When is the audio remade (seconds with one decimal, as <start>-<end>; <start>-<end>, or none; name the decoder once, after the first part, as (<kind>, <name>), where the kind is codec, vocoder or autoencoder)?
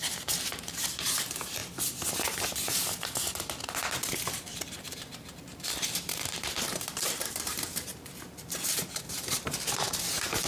0.0-1.6 (vocoder, BigVGAN v2); 3.7-10.5